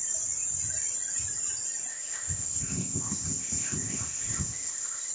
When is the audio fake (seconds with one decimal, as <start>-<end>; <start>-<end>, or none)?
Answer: 1.9-5.1